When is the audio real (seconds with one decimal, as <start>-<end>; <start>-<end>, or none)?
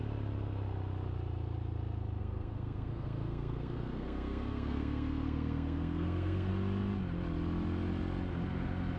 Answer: 0.0-2.2; 6.5-9.0